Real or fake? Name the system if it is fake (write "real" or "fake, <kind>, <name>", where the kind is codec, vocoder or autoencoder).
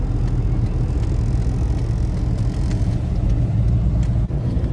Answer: real